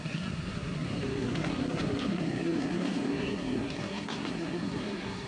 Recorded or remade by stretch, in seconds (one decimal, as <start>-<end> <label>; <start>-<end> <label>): 0.0-5.3 remade